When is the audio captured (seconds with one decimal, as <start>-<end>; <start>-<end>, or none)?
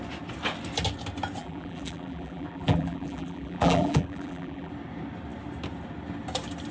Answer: 0.0-1.4; 4.7-6.7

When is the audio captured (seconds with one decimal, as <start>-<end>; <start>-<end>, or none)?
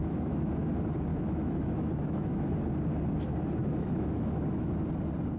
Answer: 0.5-1.1; 2.5-3.6; 4.7-5.4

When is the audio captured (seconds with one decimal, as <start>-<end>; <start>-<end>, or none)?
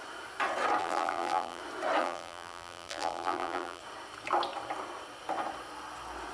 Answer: 0.0-0.8; 1.6-2.0; 3.8-6.3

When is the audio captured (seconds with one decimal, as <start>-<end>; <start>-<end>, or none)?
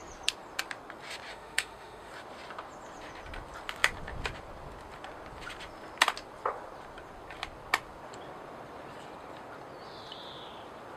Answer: 0.0-1.3; 2.1-11.0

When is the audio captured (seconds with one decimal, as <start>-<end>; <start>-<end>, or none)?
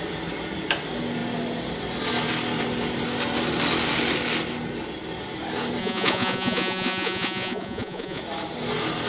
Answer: 0.0-5.8; 8.2-9.1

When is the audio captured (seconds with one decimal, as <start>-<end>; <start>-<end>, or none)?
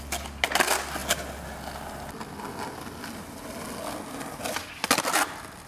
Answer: 0.0-5.7